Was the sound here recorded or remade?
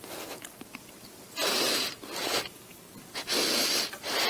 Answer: recorded